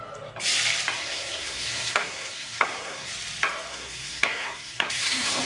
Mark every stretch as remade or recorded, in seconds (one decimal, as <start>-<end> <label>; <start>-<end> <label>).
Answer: 0.0-1.0 recorded; 1.0-3.1 remade; 3.1-3.7 recorded; 3.7-5.4 remade